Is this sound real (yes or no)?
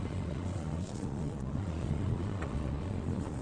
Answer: no